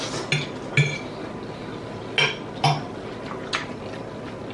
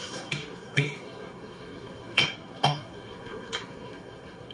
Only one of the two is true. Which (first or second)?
first